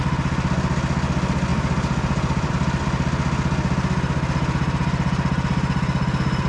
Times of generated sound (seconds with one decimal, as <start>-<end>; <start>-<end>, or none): 1.5-2.5